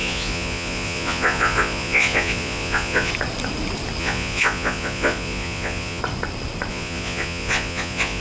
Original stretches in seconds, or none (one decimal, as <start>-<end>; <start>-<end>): 3.1-4.0; 6.0-6.7